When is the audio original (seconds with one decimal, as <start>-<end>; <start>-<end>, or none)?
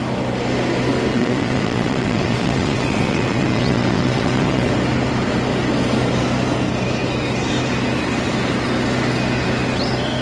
0.0-1.1; 4.7-10.2